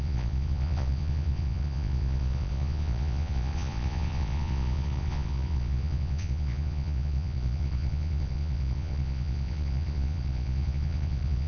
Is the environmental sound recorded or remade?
remade